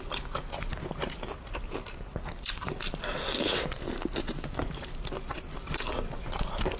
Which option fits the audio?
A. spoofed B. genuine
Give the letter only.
B